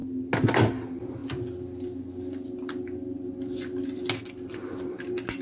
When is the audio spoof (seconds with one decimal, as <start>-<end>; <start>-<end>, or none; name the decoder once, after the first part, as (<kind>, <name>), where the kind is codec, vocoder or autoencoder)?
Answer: none